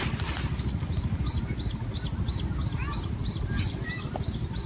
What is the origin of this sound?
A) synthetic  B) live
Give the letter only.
B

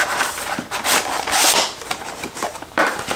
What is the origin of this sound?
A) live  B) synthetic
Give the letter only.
B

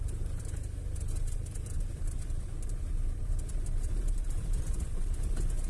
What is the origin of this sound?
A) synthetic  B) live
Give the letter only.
A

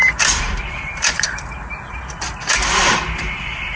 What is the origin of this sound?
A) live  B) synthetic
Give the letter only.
B